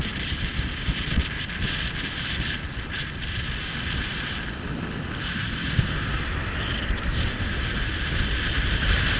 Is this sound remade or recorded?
recorded